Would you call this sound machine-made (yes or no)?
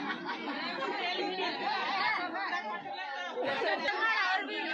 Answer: no